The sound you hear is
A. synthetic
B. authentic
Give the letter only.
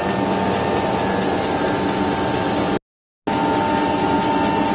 B